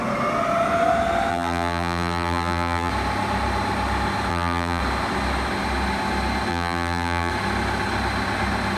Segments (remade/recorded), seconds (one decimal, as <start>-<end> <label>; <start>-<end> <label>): 0.0-1.3 recorded; 1.3-2.9 remade; 2.9-4.3 recorded; 4.3-4.8 remade; 4.8-6.5 recorded; 6.5-7.3 remade; 7.3-8.8 recorded